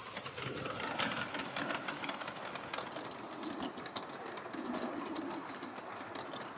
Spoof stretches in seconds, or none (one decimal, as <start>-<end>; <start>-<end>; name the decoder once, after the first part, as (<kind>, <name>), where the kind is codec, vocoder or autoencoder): none